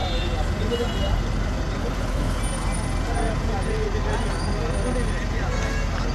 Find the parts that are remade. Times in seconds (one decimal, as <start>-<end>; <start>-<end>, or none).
1.8-2.4